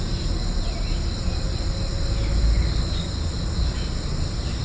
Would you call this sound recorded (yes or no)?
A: yes